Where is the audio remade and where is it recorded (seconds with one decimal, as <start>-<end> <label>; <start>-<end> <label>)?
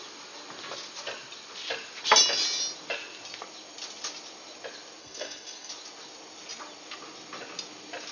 0.0-5.0 recorded; 5.0-5.7 remade; 5.7-8.1 recorded